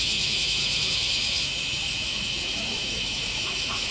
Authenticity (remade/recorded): remade